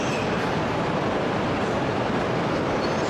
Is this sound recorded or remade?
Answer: remade